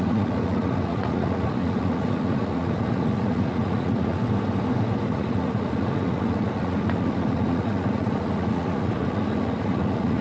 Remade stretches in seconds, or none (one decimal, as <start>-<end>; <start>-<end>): 0.0-4.2; 5.1-10.2